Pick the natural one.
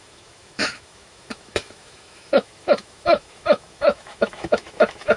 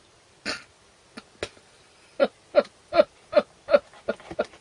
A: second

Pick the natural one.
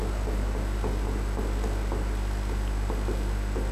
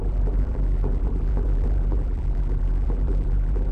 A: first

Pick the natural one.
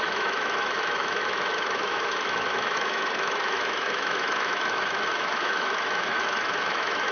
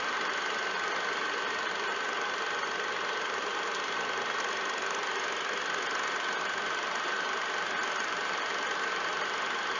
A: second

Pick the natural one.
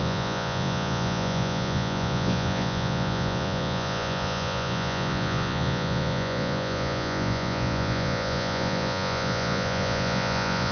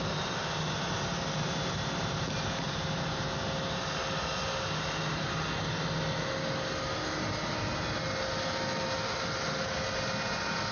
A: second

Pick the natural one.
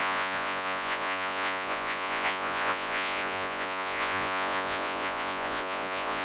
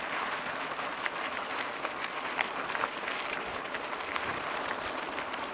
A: second